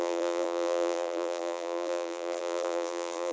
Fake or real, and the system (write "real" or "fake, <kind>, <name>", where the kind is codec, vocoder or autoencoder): fake, vocoder, BigVGAN v2